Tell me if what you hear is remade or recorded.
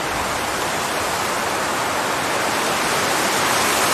remade